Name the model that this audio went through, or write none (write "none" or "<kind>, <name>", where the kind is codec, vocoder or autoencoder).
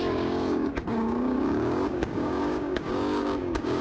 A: codec, DAC